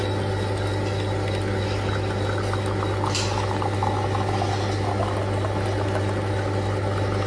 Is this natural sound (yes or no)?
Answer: yes